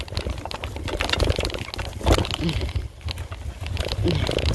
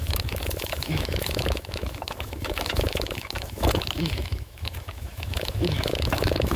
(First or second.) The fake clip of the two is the second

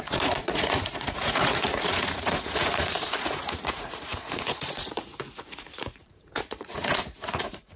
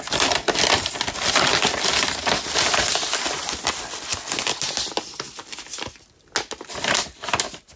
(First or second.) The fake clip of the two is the first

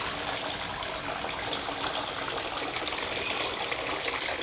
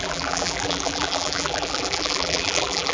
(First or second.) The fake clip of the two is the second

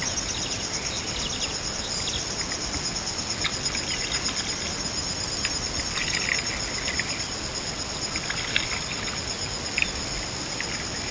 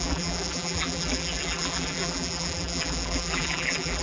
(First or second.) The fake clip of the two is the second